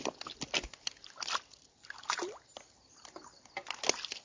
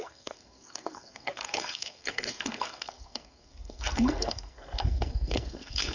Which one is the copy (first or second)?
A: second